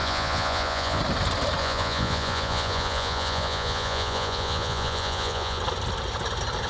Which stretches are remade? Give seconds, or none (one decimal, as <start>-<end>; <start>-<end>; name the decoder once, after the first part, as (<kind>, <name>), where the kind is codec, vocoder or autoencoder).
0.0-1.0 (vocoder, Vocos); 1.6-5.6